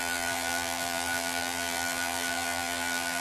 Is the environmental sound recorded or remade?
remade